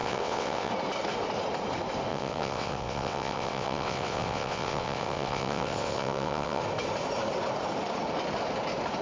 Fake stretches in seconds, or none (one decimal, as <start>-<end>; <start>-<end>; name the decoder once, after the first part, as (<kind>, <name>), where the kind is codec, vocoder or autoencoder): 0.0-0.7 (vocoder, WaveNeXt); 2.1-6.6